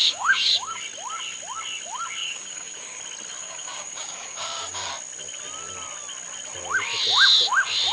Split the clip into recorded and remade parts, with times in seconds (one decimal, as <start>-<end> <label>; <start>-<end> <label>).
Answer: 0.0-0.8 remade; 0.8-2.2 recorded; 2.2-3.0 remade; 3.0-3.4 recorded; 3.4-4.9 remade; 4.9-7.9 recorded